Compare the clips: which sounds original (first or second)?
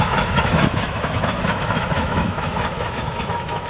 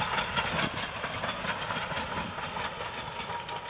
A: second